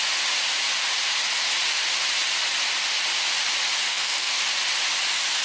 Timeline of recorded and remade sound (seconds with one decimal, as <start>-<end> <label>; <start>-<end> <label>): 0.0-3.9 recorded; 3.9-4.4 remade; 4.4-5.4 recorded